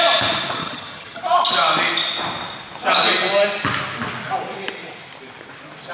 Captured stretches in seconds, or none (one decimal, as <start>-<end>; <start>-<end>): 0.0-0.6; 1.2-5.9